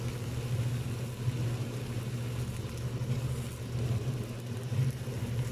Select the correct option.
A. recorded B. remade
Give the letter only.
A